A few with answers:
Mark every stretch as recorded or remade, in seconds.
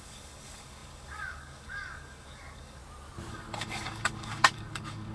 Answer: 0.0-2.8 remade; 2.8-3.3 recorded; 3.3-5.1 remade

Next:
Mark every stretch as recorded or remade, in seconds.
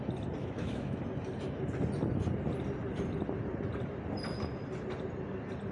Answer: 0.0-0.4 recorded; 0.4-1.0 remade; 1.0-5.7 recorded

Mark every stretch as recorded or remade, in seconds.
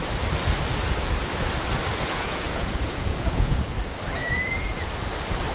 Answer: 0.0-1.9 recorded; 1.9-3.6 remade; 3.6-4.2 recorded; 4.2-4.9 remade; 4.9-5.5 recorded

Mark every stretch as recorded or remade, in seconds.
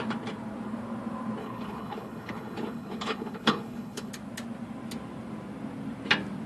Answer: 0.0-1.4 recorded; 1.4-4.1 remade; 4.1-6.5 recorded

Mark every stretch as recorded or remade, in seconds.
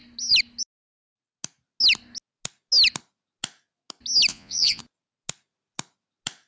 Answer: 0.0-4.3 recorded; 4.3-4.8 remade; 4.8-6.5 recorded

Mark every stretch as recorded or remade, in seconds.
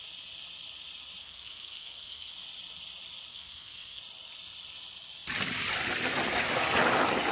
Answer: 0.0-1.2 recorded; 1.2-2.3 remade; 2.3-3.3 recorded; 3.3-4.0 remade; 4.0-7.3 recorded